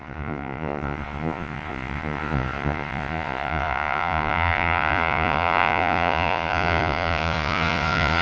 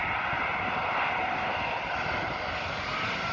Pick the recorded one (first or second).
second